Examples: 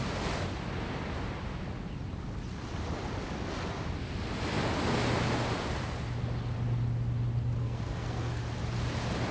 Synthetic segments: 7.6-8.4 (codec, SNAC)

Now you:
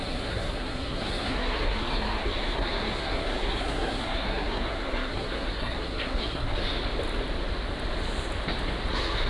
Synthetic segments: 0.0-6.6 (codec, SNAC); 8.9-9.3